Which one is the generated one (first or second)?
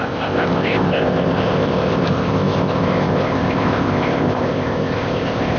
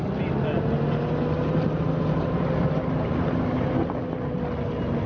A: first